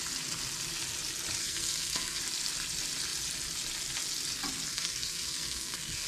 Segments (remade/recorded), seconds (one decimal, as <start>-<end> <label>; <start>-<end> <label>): 0.0-1.4 recorded; 1.4-2.2 remade; 2.2-4.7 recorded; 4.7-6.1 remade

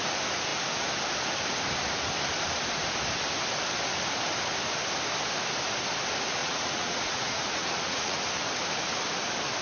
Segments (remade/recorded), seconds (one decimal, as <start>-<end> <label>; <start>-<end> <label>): 0.0-6.4 recorded; 6.4-8.2 remade; 8.2-9.6 recorded

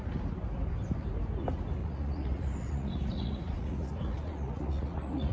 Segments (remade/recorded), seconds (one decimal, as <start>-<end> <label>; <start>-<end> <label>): 0.0-1.8 recorded; 1.8-5.3 remade

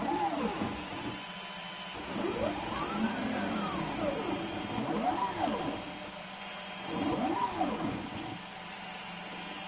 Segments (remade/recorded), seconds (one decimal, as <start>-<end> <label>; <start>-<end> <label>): 0.0-0.5 recorded; 0.5-1.4 remade; 1.4-6.2 recorded; 6.2-8.2 remade; 8.2-9.7 recorded

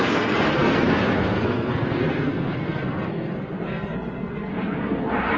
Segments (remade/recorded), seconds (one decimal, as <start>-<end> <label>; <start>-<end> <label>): 0.0-5.4 remade

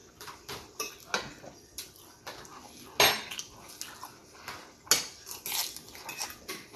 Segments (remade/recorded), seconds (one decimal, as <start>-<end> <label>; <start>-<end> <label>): 0.0-0.9 remade; 0.9-6.8 recorded

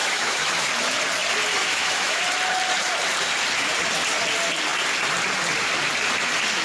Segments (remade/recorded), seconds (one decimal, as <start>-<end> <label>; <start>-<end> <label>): 0.0-0.7 remade; 0.7-1.6 recorded; 1.6-2.2 remade; 2.2-6.6 recorded

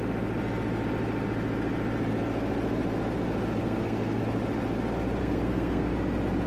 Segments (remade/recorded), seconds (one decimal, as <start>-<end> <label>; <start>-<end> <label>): 0.0-3.6 recorded; 3.6-4.2 remade; 4.2-5.2 recorded; 5.2-5.9 remade; 5.9-6.5 recorded